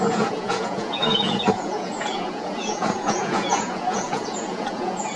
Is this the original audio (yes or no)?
no